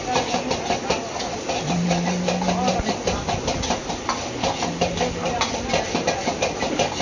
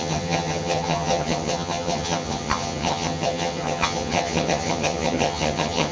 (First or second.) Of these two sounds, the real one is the first